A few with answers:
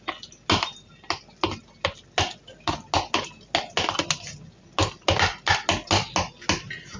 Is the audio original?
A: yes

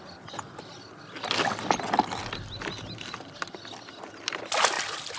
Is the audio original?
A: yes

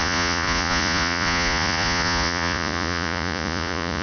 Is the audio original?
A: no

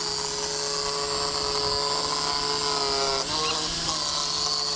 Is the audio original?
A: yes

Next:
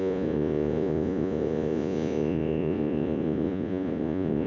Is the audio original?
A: no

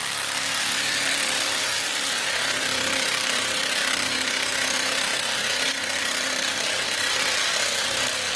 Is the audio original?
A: no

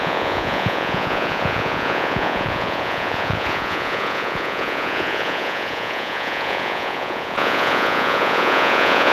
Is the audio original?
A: no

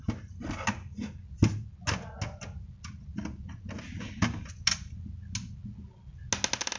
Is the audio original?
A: yes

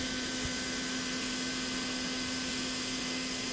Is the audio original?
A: yes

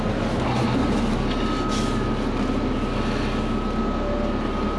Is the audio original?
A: yes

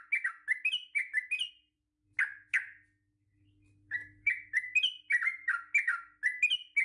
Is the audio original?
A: yes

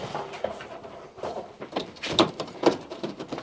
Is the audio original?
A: no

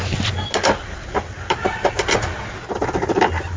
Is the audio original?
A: yes